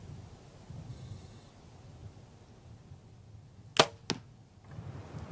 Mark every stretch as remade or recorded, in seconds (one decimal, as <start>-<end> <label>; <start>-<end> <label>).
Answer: 0.0-0.9 recorded; 0.9-1.5 remade; 1.5-5.3 recorded